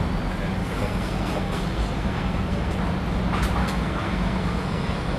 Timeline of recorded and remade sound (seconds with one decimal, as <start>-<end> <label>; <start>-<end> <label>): 0.0-0.6 recorded; 0.6-2.8 remade; 2.8-3.6 recorded; 3.6-5.2 remade